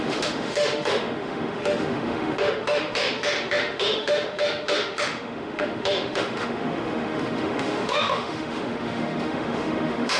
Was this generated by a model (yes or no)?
yes